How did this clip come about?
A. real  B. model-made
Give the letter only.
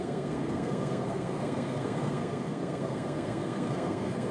B